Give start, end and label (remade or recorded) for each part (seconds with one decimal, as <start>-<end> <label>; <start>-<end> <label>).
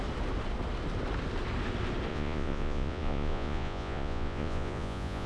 0.0-2.1 recorded; 2.1-5.3 remade